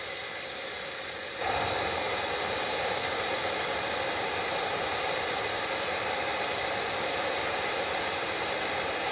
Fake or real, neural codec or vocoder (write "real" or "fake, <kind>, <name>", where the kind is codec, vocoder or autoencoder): real